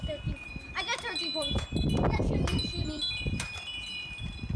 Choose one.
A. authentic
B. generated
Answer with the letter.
A